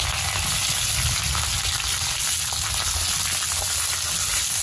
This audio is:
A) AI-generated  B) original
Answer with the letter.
B